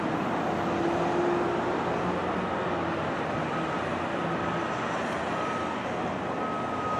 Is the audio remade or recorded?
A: recorded